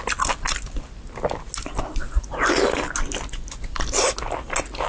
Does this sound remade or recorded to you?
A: recorded